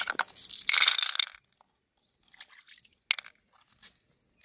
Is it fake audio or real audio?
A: real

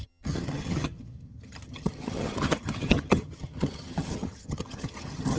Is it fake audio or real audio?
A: fake